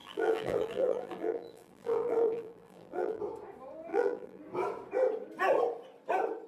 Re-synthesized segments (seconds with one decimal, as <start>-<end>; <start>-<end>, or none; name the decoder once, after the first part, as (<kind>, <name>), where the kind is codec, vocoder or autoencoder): 0.0-3.2 (vocoder, BigVGAN v2); 3.9-4.4

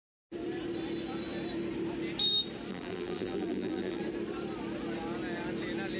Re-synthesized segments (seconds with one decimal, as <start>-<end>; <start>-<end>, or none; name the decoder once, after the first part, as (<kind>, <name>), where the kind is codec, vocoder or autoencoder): 2.7-4.0 (vocoder, BigVGAN v2)

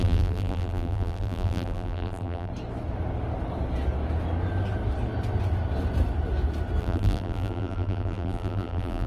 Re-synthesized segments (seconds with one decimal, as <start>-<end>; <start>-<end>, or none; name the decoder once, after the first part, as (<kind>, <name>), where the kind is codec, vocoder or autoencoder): 0.0-2.5 (vocoder, BigVGAN v2); 6.8-9.1

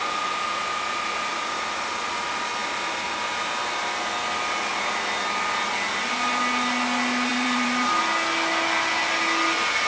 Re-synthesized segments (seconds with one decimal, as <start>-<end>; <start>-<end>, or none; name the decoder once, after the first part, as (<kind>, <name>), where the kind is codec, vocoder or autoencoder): 1.3-2.2 (vocoder, BigVGAN v2); 2.6-3.7; 7.3-8.0

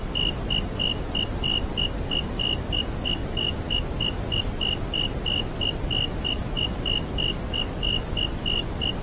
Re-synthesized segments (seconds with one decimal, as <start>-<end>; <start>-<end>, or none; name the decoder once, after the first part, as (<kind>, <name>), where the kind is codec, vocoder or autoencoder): 3.2-3.8 (vocoder, BigVGAN v2)

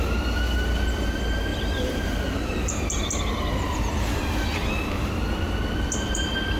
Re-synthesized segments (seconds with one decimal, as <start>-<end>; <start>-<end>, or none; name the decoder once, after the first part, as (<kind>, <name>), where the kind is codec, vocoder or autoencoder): 1.5-3.2 (vocoder, BigVGAN v2)